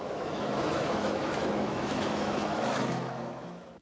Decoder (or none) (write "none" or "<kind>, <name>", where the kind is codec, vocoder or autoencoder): autoencoder, DAC-VAE